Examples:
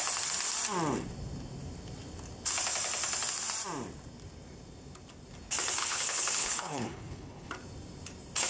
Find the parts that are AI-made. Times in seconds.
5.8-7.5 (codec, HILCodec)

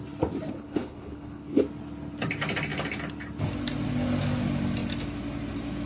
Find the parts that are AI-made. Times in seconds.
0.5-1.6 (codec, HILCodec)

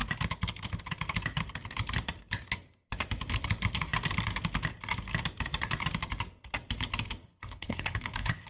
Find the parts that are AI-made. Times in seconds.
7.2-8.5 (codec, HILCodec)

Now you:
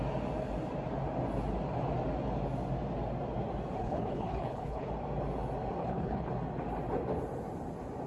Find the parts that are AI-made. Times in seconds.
3.8-4.9 (codec, HILCodec); 5.8-6.3